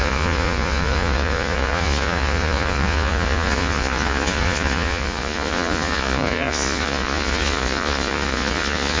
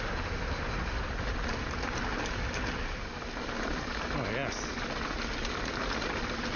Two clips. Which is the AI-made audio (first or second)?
first